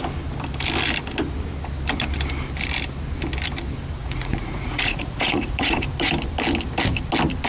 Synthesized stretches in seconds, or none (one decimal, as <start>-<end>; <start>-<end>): 4.0-6.1